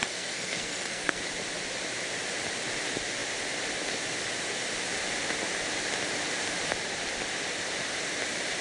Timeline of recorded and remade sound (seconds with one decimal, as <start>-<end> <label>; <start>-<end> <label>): 0.0-1.2 remade; 1.2-8.6 recorded